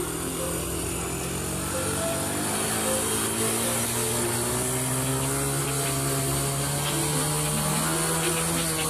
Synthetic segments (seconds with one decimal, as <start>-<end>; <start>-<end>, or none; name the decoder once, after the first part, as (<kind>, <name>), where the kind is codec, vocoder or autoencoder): none